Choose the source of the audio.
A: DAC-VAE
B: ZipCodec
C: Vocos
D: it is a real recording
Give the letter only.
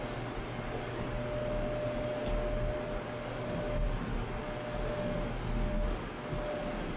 D